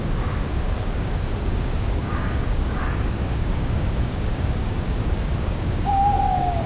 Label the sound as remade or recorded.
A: remade